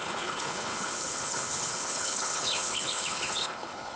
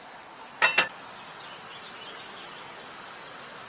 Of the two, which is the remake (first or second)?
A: first